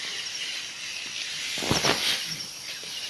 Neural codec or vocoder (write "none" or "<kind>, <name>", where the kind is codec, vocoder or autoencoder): none